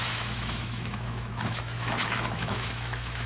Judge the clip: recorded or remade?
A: remade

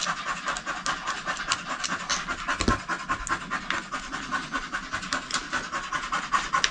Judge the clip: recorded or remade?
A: recorded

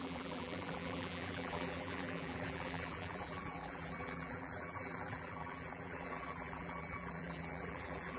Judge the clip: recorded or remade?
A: remade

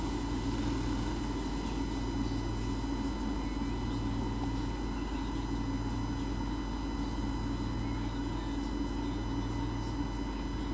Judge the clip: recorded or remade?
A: recorded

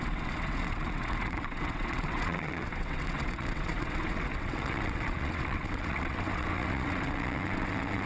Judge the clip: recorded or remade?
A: remade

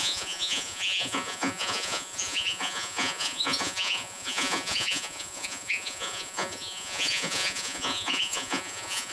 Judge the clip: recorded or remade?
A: remade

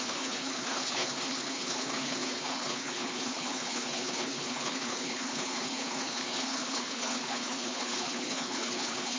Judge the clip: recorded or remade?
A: remade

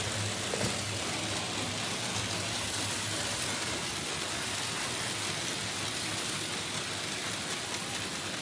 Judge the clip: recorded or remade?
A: recorded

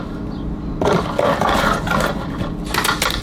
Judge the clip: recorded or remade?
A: recorded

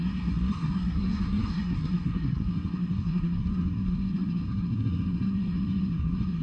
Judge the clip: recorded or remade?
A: remade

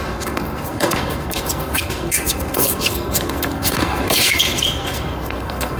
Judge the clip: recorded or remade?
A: remade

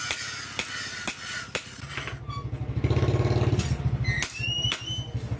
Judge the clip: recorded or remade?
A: recorded